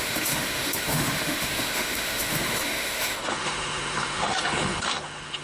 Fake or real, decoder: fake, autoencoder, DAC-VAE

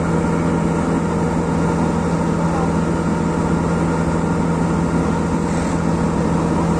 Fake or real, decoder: real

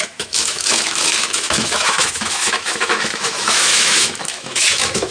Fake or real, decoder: fake, autoencoder, DAC-VAE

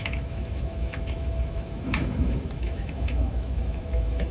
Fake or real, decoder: fake, autoencoder, DAC-VAE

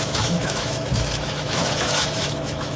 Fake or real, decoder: fake, autoencoder, DAC-VAE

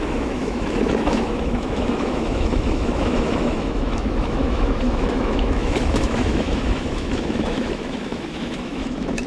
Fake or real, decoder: fake, autoencoder, DAC-VAE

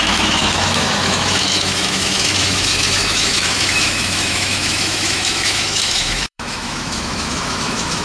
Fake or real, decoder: fake, autoencoder, DAC-VAE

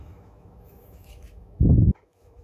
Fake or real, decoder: fake, autoencoder, DAC-VAE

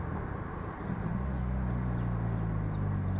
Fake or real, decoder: real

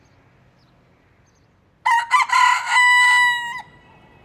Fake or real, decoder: real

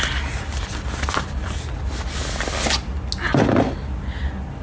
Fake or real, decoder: real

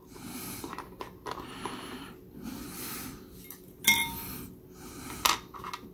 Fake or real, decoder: real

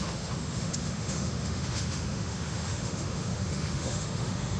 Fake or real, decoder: fake, autoencoder, DAC-VAE